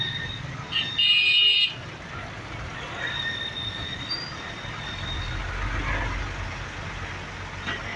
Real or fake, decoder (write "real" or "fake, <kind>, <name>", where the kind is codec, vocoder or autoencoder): real